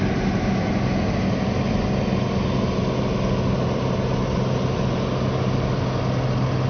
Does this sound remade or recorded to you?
recorded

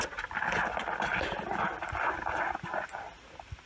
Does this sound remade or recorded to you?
recorded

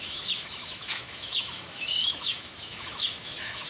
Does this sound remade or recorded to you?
remade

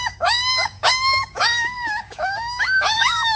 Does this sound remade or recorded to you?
remade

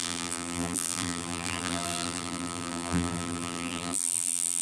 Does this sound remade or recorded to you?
remade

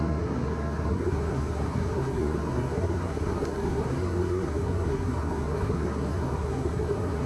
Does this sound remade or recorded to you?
remade